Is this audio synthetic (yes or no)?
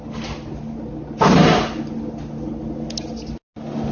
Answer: no